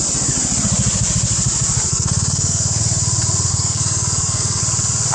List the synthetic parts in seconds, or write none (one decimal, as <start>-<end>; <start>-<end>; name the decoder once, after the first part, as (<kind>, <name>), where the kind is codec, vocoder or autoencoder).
1.9-2.8 (codec, SNAC); 3.5-4.6